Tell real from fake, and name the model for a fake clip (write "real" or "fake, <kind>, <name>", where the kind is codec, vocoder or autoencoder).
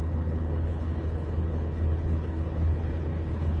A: fake, codec, HILCodec